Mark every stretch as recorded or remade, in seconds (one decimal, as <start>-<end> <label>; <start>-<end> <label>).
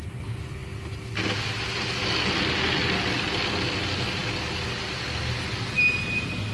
0.0-6.5 recorded